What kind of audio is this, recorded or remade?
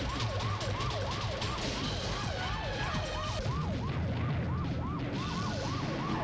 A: recorded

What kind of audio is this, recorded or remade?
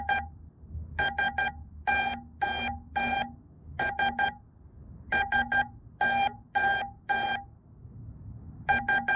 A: recorded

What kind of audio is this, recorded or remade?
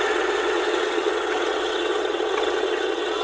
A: remade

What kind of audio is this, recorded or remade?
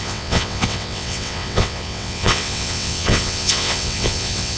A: remade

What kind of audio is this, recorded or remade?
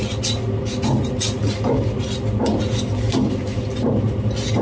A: recorded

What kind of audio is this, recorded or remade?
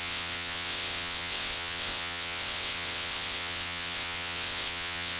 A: remade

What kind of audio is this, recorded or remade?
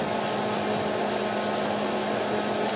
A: recorded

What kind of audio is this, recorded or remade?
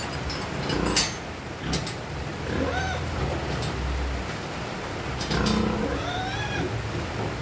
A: recorded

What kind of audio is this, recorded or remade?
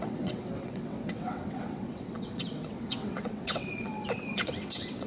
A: remade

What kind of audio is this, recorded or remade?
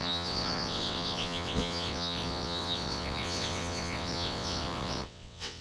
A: remade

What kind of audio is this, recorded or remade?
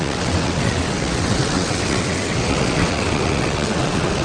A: remade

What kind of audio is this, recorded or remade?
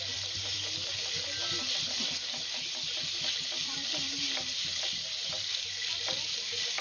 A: recorded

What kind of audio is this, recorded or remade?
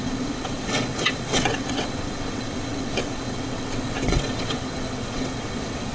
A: remade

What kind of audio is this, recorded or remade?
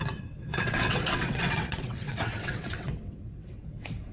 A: remade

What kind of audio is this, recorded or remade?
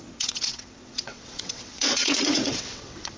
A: remade